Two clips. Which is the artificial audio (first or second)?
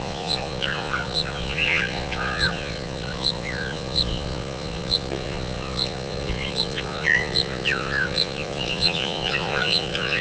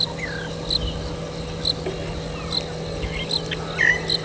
first